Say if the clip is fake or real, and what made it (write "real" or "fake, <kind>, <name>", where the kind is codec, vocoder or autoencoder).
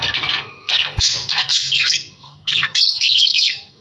fake, codec, SNAC